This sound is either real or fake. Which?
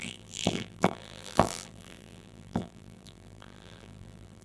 fake